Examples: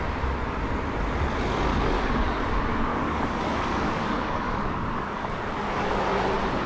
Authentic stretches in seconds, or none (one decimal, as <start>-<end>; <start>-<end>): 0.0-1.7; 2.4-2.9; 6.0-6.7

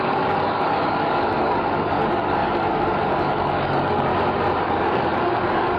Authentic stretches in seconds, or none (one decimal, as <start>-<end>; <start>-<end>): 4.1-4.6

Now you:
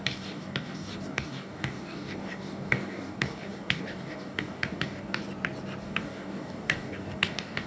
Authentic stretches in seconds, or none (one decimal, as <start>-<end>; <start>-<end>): 5.2-5.8

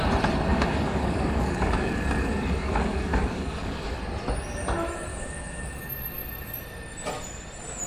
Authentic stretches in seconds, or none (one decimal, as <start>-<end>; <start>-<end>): 0.0-0.5; 4.0-5.1; 5.6-7.9

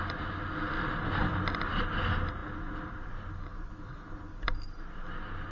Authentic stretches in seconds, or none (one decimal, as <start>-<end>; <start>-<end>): 0.0-5.5